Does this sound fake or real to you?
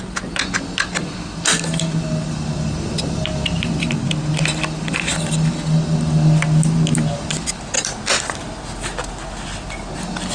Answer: real